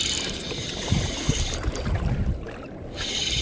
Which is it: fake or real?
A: real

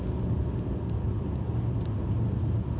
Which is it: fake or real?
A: real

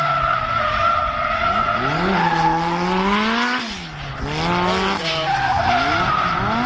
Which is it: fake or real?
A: real